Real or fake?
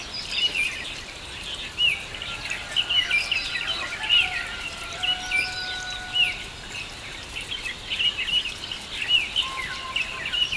real